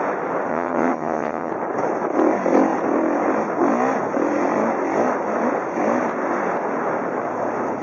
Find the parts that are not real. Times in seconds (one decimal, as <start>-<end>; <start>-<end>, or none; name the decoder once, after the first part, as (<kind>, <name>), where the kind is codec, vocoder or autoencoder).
0.5-1.5 (vocoder, HiFi-GAN)